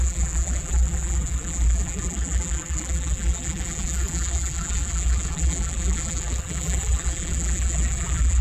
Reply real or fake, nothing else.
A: fake